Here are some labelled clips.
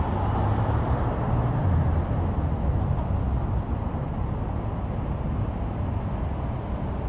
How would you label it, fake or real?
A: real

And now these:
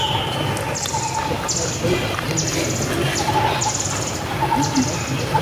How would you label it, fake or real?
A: real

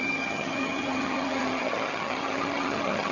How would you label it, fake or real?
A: fake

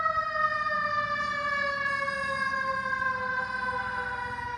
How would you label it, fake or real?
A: real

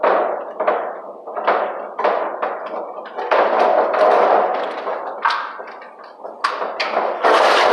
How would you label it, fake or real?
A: real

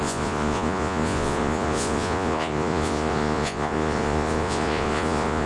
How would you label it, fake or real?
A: fake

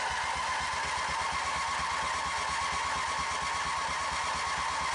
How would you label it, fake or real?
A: real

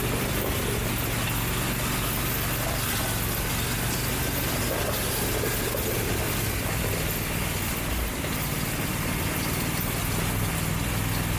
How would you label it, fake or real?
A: real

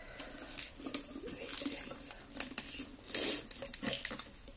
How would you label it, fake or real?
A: real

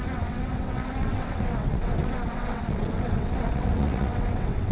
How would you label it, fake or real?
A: fake